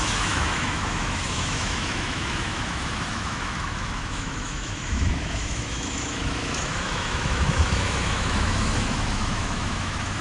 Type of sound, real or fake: fake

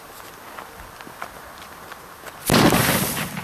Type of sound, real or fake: real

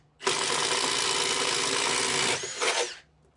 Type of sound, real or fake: real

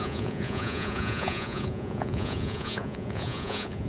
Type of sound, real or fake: fake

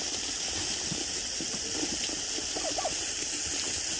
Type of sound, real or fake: real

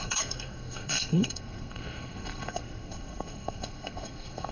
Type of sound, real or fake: fake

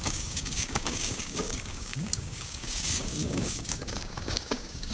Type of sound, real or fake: fake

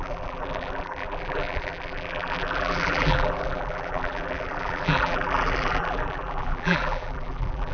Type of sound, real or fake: fake